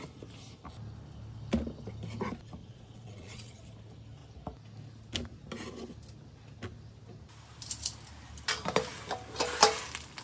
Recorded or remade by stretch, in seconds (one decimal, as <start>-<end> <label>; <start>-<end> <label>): 0.0-2.6 recorded; 2.6-3.6 remade; 3.6-10.2 recorded